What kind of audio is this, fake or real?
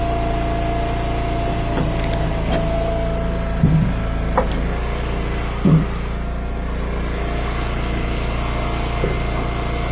real